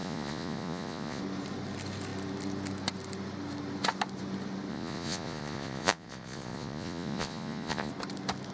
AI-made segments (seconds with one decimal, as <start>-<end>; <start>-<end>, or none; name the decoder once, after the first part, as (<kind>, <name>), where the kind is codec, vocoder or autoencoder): 0.0-1.2 (vocoder, Vocos); 4.7-7.9